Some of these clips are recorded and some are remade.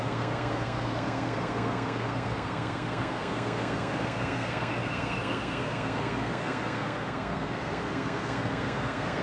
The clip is remade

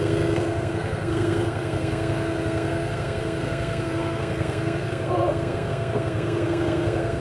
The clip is remade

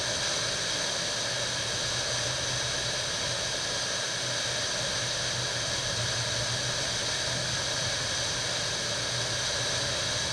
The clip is recorded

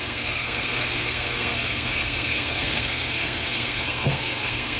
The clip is remade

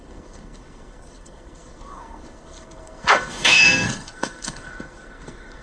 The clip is remade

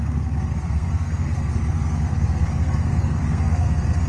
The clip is remade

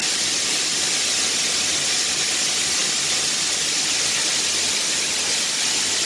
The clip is recorded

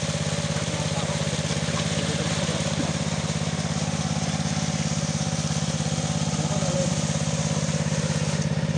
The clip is recorded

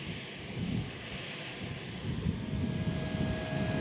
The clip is recorded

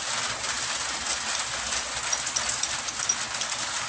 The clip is recorded